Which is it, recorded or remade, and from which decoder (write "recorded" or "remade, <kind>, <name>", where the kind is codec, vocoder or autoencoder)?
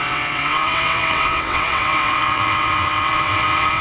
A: remade, vocoder, WaveNeXt